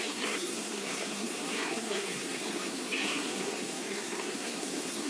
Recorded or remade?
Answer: remade